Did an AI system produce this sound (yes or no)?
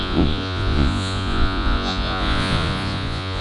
yes